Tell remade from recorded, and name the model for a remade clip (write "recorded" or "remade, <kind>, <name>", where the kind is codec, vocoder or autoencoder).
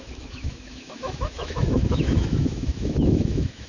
remade, autoencoder, DAC-VAE